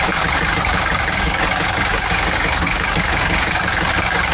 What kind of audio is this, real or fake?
fake